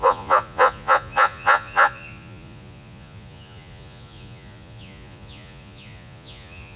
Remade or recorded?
remade